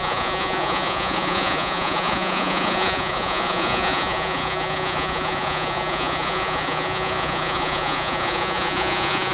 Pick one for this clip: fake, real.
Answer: fake